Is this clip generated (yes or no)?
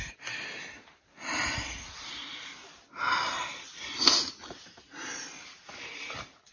no